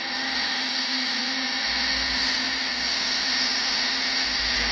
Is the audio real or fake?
real